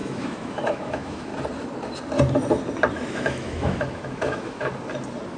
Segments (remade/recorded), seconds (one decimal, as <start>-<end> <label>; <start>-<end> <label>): 0.0-1.3 remade; 1.3-2.9 recorded; 2.9-4.7 remade; 4.7-5.4 recorded